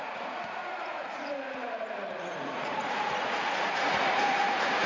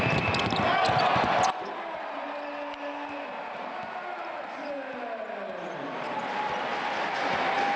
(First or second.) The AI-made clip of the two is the first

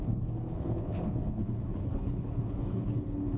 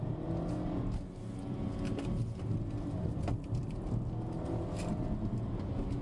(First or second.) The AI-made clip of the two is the first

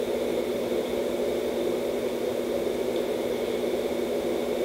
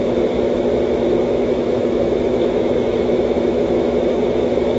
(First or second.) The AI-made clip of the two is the second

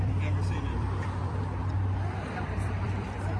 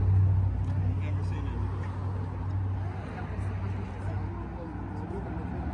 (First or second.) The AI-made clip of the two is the first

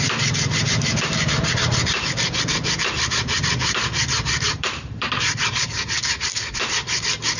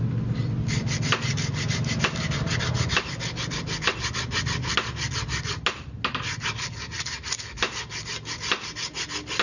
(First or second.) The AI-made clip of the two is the first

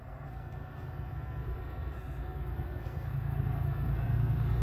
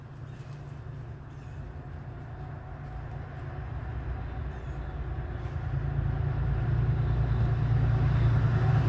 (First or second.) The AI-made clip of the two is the first